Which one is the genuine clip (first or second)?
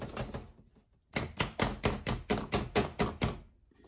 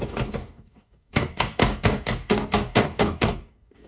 first